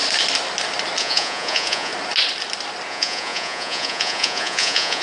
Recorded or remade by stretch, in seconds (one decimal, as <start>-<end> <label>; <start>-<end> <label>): 0.0-1.0 recorded; 1.0-1.9 remade; 1.9-2.9 recorded; 2.9-5.0 remade